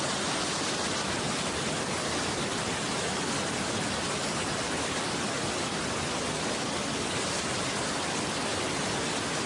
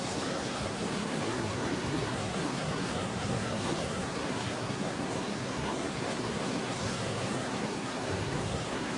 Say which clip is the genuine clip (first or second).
first